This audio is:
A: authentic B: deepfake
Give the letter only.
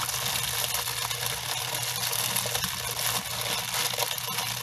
A